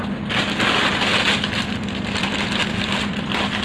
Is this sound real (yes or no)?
yes